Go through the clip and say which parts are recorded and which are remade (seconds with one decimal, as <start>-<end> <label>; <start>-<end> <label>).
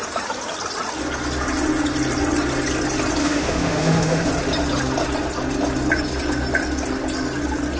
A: 0.0-3.2 recorded; 3.2-4.3 remade; 4.3-7.8 recorded